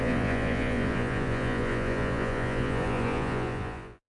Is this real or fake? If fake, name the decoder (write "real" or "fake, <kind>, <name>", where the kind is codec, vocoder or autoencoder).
fake, vocoder, Vocos